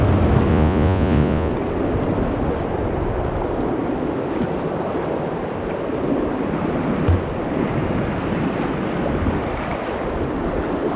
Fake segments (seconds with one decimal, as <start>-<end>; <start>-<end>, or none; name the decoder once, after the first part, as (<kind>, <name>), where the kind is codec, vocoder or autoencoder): 0.5-1.5 (vocoder, Vocos)